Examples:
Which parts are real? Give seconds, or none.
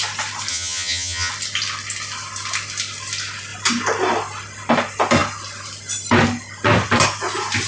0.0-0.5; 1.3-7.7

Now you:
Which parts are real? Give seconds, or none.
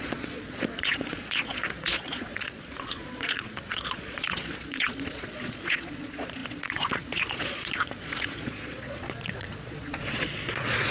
none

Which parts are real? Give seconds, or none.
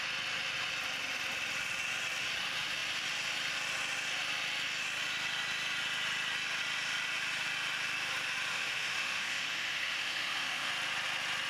0.0-8.5; 10.7-11.5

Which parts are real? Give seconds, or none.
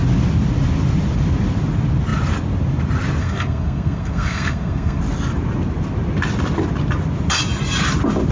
0.0-3.2; 5.0-8.3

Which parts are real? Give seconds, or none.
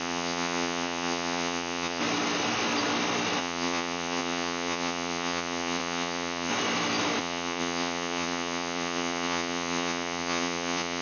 2.0-3.4; 6.5-7.2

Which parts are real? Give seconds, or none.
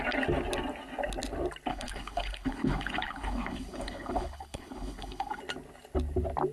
0.0-1.7; 5.4-6.5